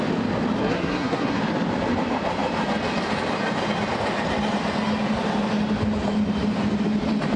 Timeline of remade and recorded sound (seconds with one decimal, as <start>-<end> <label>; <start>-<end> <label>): 0.0-0.6 recorded; 0.6-1.4 remade; 1.4-7.4 recorded